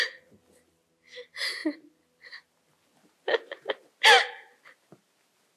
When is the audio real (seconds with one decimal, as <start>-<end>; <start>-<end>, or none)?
0.0-5.6